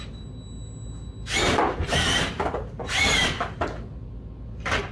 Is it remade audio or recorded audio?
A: recorded